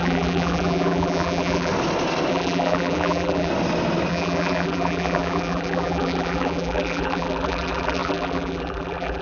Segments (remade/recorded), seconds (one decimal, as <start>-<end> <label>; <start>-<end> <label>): 0.0-1.7 remade; 1.7-2.3 recorded; 2.3-3.5 remade; 3.5-4.1 recorded; 4.1-9.2 remade